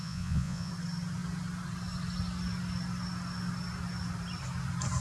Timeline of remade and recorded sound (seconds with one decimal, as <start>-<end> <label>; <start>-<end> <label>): 0.0-0.7 remade; 0.7-5.0 recorded